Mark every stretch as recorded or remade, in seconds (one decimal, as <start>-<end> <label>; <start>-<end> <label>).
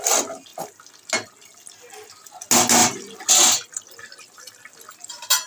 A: 0.0-2.8 recorded; 2.8-3.3 remade; 3.3-5.5 recorded